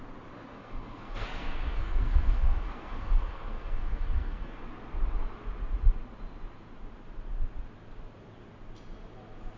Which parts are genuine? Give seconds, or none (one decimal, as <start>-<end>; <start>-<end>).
0.0-0.5; 4.6-9.6